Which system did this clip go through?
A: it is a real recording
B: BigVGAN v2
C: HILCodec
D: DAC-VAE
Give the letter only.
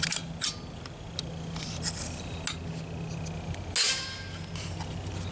A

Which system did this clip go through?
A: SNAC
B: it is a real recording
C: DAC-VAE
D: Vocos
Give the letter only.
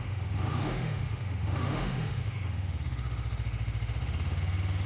C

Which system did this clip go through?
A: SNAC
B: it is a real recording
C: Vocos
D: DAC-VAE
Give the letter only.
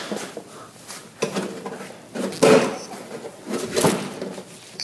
B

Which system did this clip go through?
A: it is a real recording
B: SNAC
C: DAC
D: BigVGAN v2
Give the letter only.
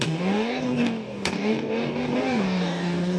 C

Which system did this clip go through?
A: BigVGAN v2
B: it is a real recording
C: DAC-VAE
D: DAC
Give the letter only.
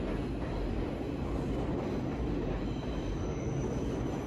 B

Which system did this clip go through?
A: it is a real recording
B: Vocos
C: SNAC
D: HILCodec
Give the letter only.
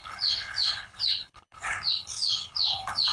D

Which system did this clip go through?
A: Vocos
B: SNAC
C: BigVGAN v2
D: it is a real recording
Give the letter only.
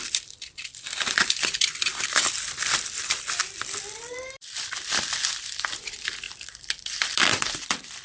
C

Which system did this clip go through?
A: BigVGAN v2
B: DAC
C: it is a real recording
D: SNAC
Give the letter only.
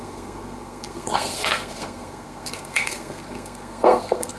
D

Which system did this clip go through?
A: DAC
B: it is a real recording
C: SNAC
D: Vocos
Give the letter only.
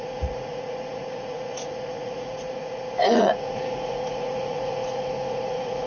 D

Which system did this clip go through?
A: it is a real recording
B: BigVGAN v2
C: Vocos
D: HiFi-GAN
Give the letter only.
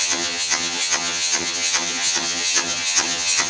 D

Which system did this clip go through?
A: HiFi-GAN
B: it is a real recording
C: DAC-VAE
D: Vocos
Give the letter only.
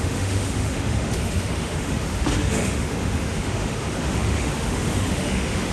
C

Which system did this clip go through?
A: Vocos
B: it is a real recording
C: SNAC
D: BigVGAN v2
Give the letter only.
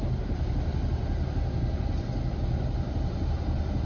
B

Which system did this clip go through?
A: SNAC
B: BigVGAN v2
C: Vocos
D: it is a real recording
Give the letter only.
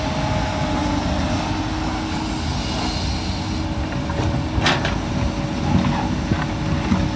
D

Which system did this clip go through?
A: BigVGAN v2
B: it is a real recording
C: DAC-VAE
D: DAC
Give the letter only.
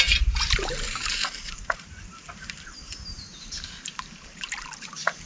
A